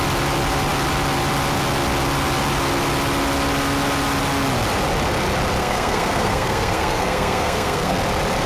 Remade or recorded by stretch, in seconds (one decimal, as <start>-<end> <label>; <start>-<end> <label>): 0.0-5.6 recorded; 5.6-8.0 remade; 8.0-8.5 recorded